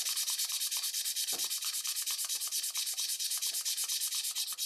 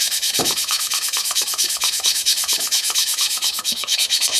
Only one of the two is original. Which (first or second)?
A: first